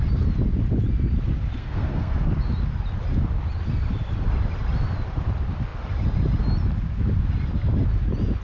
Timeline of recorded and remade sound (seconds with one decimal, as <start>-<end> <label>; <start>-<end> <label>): 0.0-1.6 recorded; 1.6-2.3 remade; 2.3-8.4 recorded